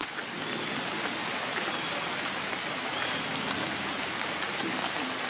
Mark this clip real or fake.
real